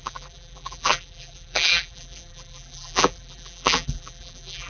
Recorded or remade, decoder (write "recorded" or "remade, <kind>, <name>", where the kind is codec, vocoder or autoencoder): remade, vocoder, BigVGAN v2